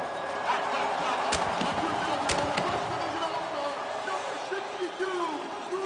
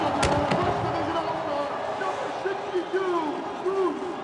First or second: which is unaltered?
second